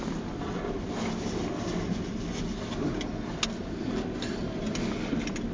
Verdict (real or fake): real